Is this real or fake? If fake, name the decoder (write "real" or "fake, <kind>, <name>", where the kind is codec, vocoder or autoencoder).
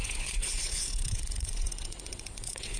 fake, vocoder, WaveNeXt